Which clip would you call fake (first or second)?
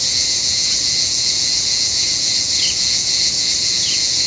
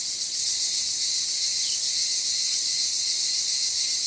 first